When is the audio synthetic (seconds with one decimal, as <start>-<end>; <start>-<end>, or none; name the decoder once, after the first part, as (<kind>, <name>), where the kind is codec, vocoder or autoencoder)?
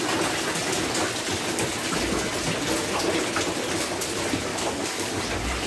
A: 4.5-5.2 (codec, DAC)